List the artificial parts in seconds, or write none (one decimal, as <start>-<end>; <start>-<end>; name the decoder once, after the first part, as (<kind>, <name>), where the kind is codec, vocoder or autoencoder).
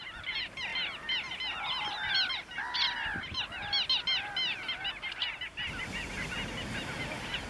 none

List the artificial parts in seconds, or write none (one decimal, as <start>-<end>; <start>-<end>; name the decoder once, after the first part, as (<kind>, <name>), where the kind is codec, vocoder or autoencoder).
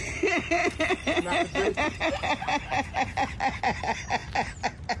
none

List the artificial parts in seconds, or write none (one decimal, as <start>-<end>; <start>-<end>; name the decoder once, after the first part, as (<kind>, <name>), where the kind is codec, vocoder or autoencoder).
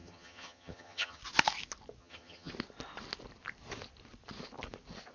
0.0-1.2 (vocoder, HiFi-GAN); 2.0-2.5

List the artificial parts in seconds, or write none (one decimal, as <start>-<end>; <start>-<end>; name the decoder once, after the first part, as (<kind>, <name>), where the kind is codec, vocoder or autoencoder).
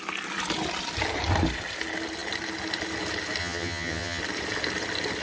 3.4-4.2 (vocoder, HiFi-GAN)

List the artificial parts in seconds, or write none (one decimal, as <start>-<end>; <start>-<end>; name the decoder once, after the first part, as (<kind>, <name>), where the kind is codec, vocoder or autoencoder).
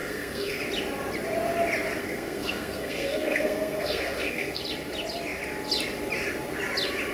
0.0-0.6 (codec, SNAC); 2.0-4.6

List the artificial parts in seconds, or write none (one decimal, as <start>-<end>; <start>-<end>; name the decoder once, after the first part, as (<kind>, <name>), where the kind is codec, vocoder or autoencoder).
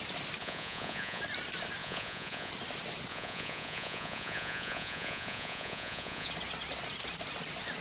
0.4-1.2 (vocoder, Vocos); 1.8-2.5; 3.1-6.3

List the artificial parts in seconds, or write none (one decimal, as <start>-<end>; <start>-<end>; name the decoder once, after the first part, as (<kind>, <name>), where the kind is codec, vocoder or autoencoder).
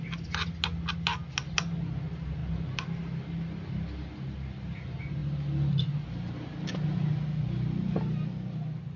none